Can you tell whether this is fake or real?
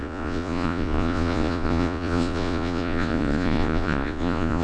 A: fake